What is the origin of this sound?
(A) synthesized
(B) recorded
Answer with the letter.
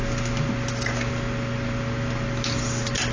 B